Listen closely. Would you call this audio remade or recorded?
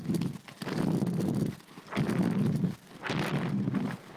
recorded